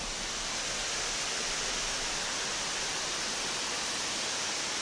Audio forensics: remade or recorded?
recorded